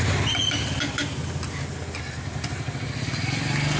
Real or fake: real